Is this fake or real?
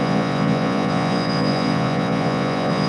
fake